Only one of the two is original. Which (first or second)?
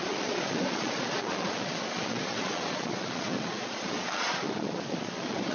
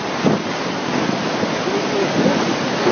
second